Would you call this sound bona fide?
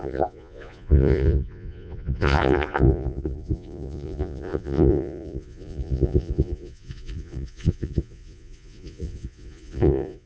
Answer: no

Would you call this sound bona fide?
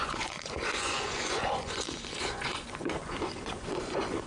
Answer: no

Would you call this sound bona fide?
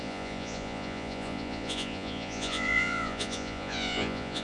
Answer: no